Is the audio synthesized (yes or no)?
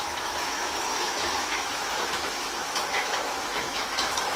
yes